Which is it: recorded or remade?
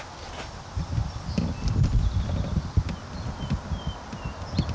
recorded